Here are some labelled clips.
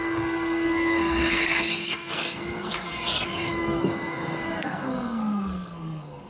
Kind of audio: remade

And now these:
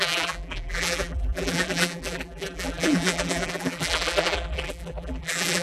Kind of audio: remade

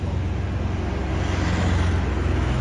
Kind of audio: recorded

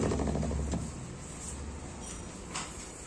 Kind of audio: recorded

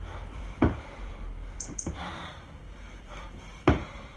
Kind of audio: remade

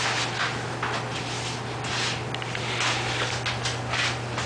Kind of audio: recorded